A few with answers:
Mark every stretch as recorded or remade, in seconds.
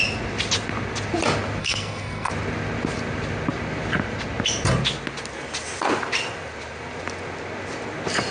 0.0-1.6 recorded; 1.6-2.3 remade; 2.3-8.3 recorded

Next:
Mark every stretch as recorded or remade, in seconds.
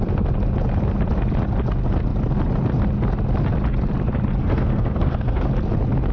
0.0-4.4 recorded; 4.4-5.5 remade; 5.5-6.1 recorded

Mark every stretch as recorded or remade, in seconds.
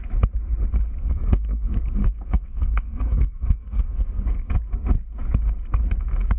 0.0-1.0 recorded; 1.0-4.5 remade; 4.5-6.4 recorded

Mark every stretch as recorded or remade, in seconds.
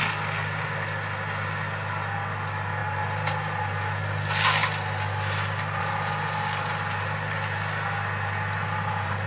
0.0-9.3 recorded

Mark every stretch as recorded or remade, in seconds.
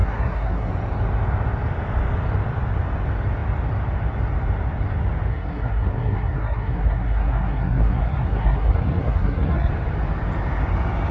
0.0-0.7 remade; 0.7-5.3 recorded; 5.3-9.7 remade; 9.7-11.1 recorded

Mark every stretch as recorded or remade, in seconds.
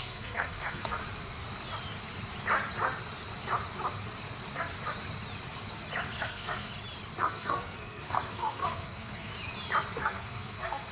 0.0-1.0 remade; 1.0-6.2 recorded; 6.2-6.7 remade; 6.7-7.2 recorded; 7.2-9.3 remade; 9.3-10.0 recorded; 10.0-10.9 remade